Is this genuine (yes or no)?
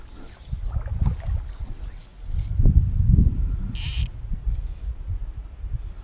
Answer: yes